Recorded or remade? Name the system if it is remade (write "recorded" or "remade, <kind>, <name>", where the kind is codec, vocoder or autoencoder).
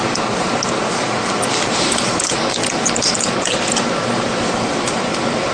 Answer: recorded